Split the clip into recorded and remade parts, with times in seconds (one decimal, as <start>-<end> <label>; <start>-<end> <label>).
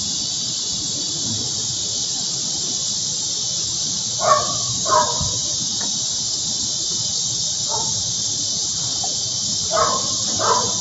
0.0-2.8 remade; 2.8-3.7 recorded; 3.7-7.1 remade; 7.1-7.8 recorded; 7.8-9.7 remade; 9.7-10.8 recorded